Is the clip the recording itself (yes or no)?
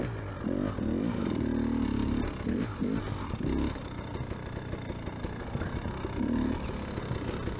yes